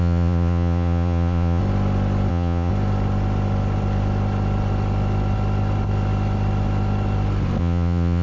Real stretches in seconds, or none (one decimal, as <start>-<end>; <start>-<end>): 1.6-2.3; 2.7-7.6